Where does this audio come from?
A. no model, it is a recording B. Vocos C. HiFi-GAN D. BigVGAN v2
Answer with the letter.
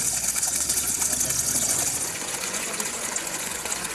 B